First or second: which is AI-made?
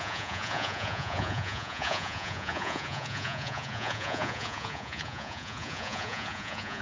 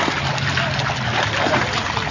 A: first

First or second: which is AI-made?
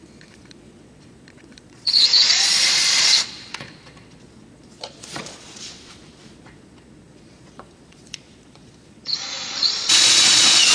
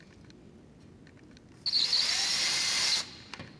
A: first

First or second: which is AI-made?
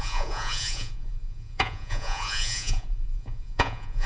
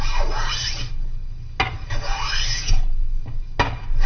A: first